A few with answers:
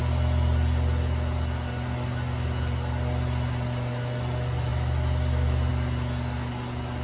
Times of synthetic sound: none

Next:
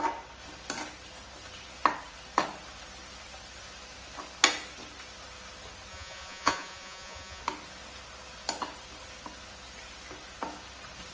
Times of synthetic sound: 5.9-7.4 (vocoder, Vocos)

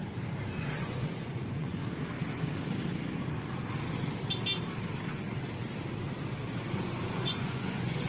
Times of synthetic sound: 0.6-1.8 (vocoder, Vocos); 6.7-8.1